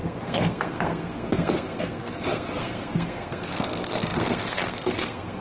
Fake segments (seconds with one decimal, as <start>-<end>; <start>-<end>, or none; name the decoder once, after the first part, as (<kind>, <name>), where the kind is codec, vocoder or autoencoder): 0.0-5.4 (codec, SNAC)